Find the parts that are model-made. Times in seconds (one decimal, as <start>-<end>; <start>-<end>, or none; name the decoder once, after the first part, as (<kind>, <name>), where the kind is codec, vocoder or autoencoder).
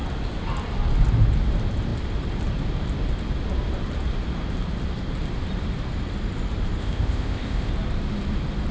6.8-7.7 (codec, ZipCodec)